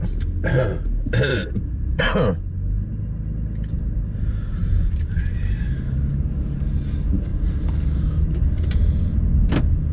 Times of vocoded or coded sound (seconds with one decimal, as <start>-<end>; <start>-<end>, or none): 1.3-2.0; 4.6-6.5